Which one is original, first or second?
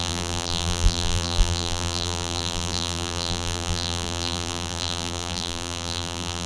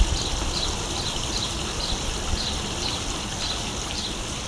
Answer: second